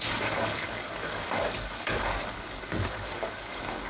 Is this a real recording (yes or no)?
no